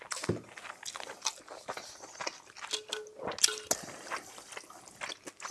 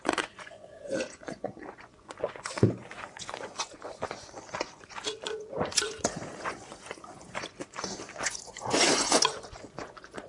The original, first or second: first